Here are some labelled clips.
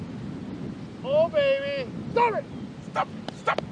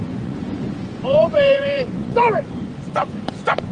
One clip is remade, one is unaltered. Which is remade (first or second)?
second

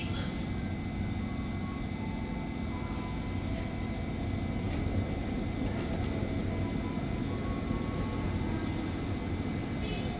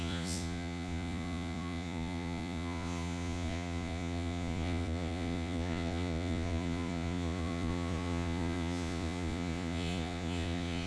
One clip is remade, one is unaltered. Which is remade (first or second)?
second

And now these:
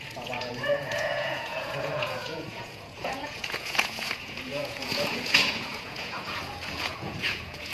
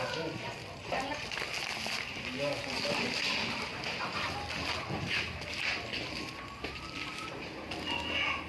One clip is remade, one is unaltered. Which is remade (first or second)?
first